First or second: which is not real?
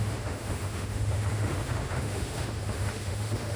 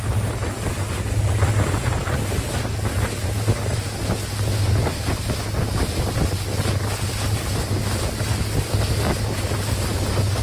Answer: first